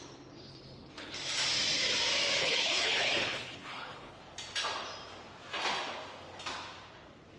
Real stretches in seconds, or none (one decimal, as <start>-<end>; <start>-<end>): 0.0-0.5; 1.1-2.4; 4.2-7.4